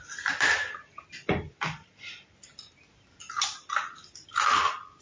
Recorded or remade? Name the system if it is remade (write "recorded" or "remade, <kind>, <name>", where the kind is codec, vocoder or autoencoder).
recorded